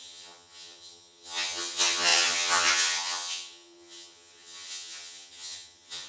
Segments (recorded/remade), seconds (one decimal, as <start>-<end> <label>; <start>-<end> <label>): 0.0-6.1 remade

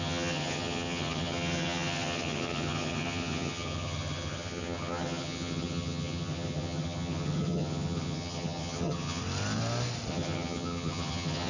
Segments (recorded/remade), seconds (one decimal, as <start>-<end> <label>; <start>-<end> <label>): 0.0-9.2 remade; 9.2-10.1 recorded; 10.1-11.5 remade

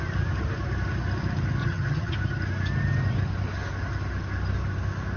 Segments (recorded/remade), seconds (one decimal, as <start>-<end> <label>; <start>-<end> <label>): 0.0-1.6 recorded; 1.6-2.1 remade; 2.1-5.2 recorded

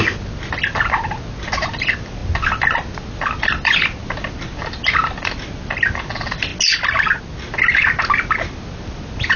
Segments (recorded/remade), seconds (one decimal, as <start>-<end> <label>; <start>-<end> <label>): 0.0-9.4 recorded

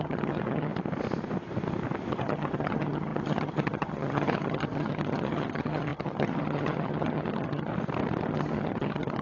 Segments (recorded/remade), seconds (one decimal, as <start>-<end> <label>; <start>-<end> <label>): 0.0-0.7 remade; 0.7-2.1 recorded; 2.1-7.7 remade; 7.7-8.3 recorded; 8.3-9.2 remade

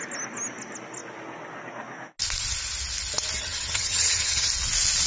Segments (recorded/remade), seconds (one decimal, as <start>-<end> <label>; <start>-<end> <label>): 0.0-3.4 recorded; 3.4-4.5 remade; 4.5-5.1 recorded

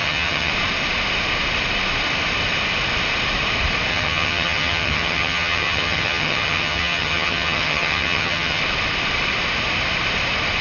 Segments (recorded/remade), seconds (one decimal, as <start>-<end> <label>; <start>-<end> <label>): 0.0-0.5 remade; 0.5-3.9 recorded; 3.9-8.6 remade; 8.6-10.6 recorded

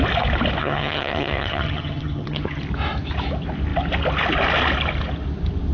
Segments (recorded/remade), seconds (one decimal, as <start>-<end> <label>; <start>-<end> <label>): 0.0-0.6 recorded; 0.6-2.6 remade; 2.6-5.7 recorded